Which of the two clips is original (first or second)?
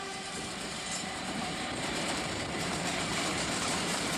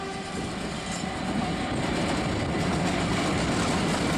second